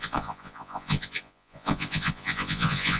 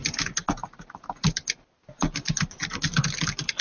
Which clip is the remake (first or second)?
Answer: first